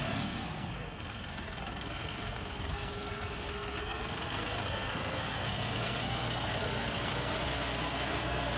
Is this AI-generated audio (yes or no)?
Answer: yes